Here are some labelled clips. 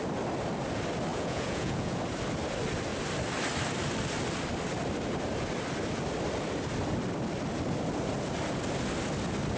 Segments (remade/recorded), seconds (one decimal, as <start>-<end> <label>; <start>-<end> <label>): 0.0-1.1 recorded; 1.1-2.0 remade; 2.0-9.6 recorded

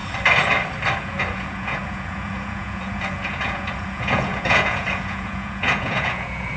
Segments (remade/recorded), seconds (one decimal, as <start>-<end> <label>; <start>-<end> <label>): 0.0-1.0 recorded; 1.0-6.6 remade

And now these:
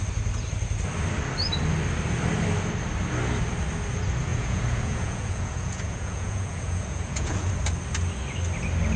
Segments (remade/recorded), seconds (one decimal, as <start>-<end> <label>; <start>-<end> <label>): 0.0-4.3 recorded; 4.3-7.5 remade; 7.5-9.0 recorded

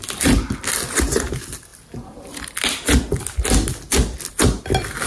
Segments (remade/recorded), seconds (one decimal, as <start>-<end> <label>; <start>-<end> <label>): 0.0-5.1 recorded

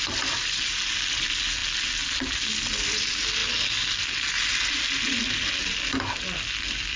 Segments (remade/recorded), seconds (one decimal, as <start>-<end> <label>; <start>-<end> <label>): 0.0-7.0 recorded

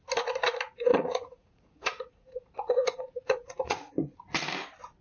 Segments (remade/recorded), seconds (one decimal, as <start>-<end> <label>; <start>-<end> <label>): 0.0-0.9 recorded; 0.9-3.9 remade; 3.9-5.0 recorded

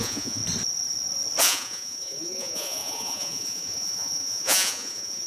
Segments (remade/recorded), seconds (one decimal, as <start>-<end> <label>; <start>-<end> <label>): 0.0-0.4 remade; 0.4-1.4 recorded; 1.4-5.3 remade